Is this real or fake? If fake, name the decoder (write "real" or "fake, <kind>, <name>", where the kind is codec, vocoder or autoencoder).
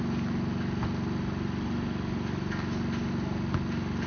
real